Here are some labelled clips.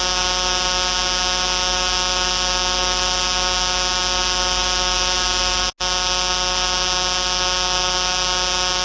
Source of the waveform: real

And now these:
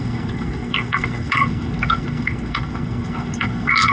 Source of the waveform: fake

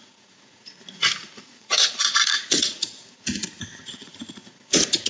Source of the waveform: fake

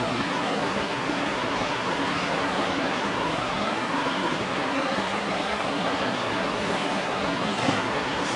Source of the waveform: fake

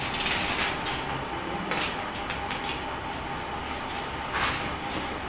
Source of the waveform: real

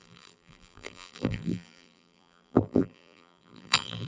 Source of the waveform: fake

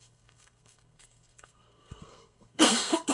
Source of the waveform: fake